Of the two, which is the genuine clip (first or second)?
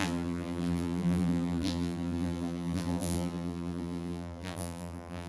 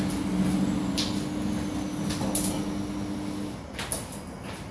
second